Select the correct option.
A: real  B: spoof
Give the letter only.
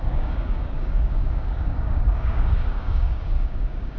B